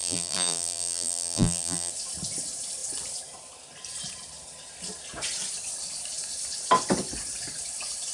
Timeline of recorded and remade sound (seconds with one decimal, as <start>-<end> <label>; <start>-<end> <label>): 0.0-1.9 remade; 1.9-8.1 recorded